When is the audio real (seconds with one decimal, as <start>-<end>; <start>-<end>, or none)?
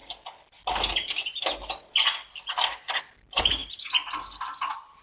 0.0-5.0